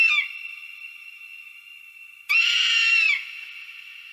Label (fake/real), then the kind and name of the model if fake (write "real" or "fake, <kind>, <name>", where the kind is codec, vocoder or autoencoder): real